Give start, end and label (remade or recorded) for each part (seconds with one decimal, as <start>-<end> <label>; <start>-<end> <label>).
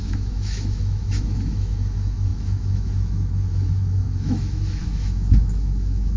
0.0-6.2 remade